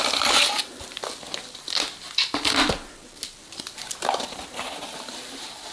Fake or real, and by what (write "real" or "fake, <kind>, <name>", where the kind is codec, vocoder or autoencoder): real